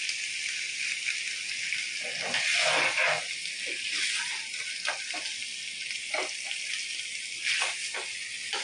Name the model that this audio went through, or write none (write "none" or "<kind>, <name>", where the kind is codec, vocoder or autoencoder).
none